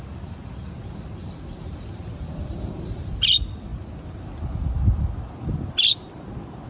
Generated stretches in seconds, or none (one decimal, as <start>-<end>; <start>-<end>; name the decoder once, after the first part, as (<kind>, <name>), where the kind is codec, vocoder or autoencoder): 1.2-3.1 (vocoder, BigVGAN v2)